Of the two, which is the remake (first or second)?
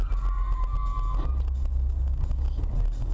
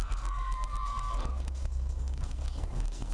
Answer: second